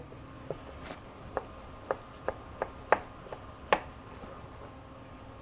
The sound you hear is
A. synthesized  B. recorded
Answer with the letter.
B